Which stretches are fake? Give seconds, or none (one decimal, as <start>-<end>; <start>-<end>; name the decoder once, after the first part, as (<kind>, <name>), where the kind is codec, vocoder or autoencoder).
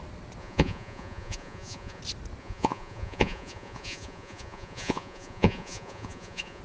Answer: 0.4-2.0 (vocoder, Vocos); 2.4-6.6